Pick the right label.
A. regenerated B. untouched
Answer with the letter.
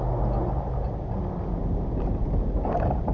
B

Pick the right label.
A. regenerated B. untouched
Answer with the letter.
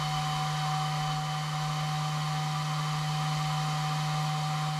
B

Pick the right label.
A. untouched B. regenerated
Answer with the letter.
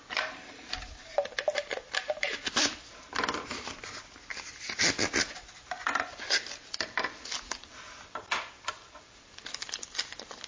A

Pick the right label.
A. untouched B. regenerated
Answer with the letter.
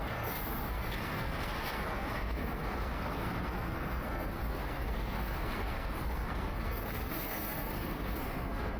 B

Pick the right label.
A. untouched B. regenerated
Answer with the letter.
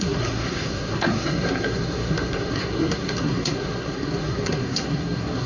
B